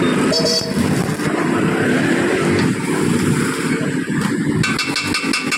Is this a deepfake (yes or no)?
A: no